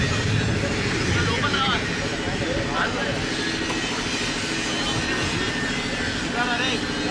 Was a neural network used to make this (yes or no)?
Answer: no